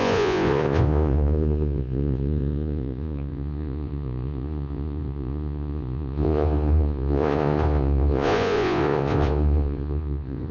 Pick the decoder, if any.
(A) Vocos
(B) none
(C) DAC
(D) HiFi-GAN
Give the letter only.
A